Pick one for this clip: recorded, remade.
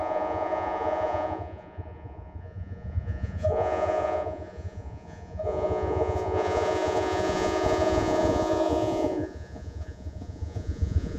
remade